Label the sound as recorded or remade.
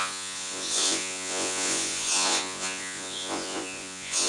remade